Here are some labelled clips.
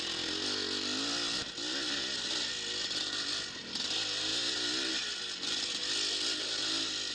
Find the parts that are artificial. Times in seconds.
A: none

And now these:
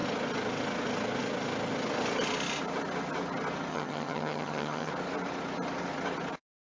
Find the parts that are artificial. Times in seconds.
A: 3.7-4.9 (vocoder, HiFi-GAN)

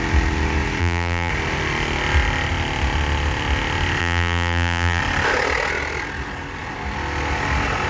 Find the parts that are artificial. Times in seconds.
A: 0.8-1.3 (vocoder, BigVGAN v2); 4.0-5.0

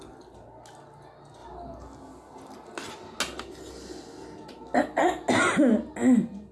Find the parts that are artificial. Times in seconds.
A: none

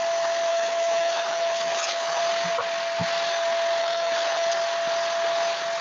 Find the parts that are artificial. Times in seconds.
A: 0.5-2.2 (codec, HILCodec); 3.8-4.5

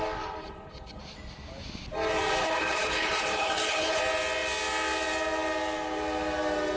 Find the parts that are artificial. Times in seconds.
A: 0.4-1.0 (codec, HILCodec); 2.4-4.0

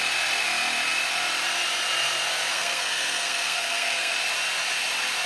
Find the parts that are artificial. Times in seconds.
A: 2.5-4.1 (codec, SNAC)